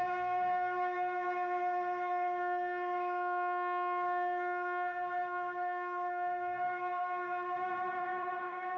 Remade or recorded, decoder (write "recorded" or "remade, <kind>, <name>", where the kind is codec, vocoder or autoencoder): remade, autoencoder, DAC-VAE